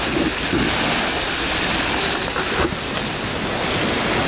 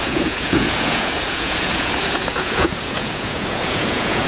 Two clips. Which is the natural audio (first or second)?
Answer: first